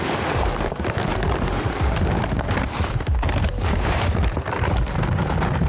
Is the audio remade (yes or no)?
yes